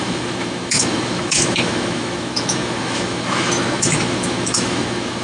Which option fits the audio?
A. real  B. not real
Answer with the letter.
B